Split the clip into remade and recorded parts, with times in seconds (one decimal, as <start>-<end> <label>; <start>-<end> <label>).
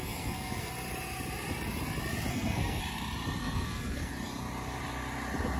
0.0-0.7 remade; 0.7-2.3 recorded; 2.3-2.8 remade; 2.8-3.4 recorded; 3.4-4.1 remade; 4.1-5.6 recorded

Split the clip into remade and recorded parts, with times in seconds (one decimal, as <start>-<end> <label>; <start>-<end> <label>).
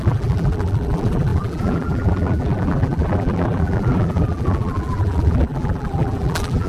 0.0-6.7 remade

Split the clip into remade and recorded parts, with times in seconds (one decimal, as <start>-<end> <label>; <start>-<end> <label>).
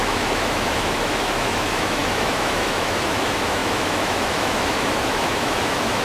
0.0-6.0 remade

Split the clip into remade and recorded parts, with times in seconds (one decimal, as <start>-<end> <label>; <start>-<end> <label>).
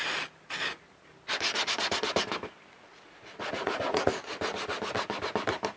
0.0-2.9 recorded; 2.9-4.1 remade; 4.1-5.8 recorded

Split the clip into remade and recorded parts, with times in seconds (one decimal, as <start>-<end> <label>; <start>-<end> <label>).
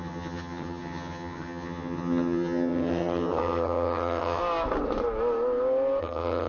0.0-4.4 remade; 4.4-6.0 recorded; 6.0-6.5 remade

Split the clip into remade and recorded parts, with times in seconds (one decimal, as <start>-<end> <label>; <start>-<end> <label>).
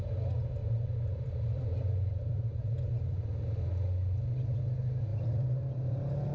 0.0-0.6 recorded; 0.6-2.7 remade; 2.7-5.1 recorded; 5.1-5.6 remade; 5.6-6.3 recorded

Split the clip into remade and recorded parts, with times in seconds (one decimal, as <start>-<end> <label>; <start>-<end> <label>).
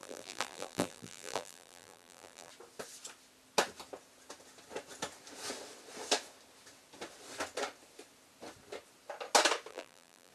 0.0-2.5 remade; 2.5-9.7 recorded; 9.7-10.3 remade